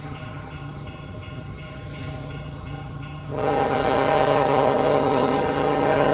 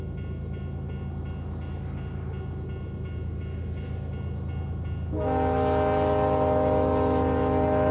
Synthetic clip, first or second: first